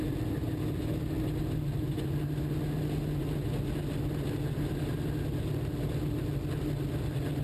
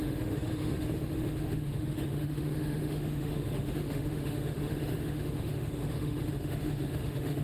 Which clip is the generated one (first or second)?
second